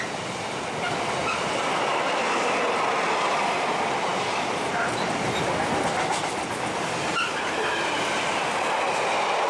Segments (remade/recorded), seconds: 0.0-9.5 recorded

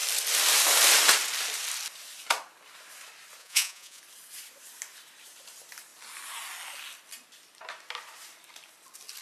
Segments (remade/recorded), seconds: 0.0-3.4 recorded; 3.4-4.0 remade; 4.0-9.2 recorded

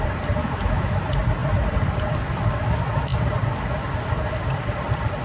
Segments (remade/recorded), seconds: 0.0-0.4 recorded; 0.4-1.0 remade; 1.0-5.2 recorded

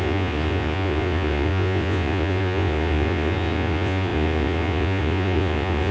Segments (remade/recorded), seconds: 0.0-5.9 remade

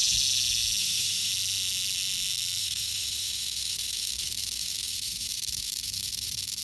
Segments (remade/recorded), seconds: 0.0-0.8 recorded; 0.8-1.3 remade; 1.3-2.6 recorded; 2.6-6.6 remade

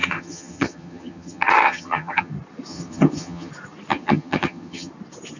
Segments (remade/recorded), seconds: 0.0-2.3 remade; 2.3-2.7 recorded; 2.7-3.5 remade; 3.5-3.9 recorded; 3.9-4.9 remade; 4.9-5.4 recorded

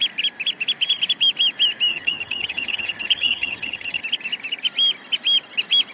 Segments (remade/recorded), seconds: 0.0-1.9 recorded; 1.9-4.0 remade; 4.0-5.9 recorded